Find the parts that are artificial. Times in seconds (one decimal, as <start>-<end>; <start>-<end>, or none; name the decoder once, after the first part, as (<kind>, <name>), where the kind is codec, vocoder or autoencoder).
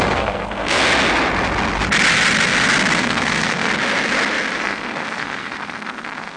0.0-0.8 (codec, SNAC); 3.0-3.7; 4.6-6.4